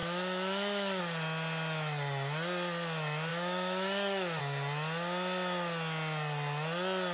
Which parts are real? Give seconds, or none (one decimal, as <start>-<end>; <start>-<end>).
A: 1.0-3.3; 4.4-7.1